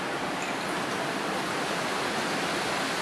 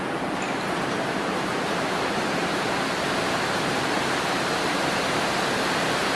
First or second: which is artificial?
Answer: second